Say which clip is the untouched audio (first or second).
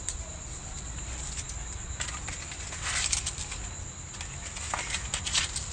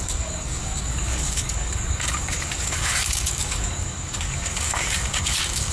first